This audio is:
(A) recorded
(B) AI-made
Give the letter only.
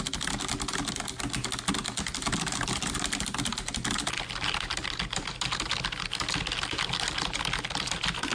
A